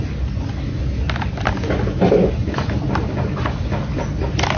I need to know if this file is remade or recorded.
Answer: recorded